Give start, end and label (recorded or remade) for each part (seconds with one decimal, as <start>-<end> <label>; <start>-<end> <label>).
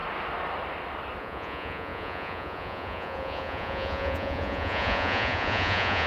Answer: 0.0-1.2 recorded; 1.2-6.1 remade